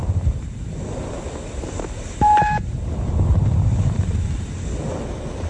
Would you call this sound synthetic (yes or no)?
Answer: no